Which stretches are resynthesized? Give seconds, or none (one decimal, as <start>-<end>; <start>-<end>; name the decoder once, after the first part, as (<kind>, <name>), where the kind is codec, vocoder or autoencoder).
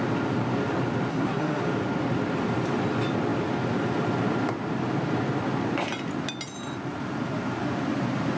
1.1-1.6 (codec, SNAC)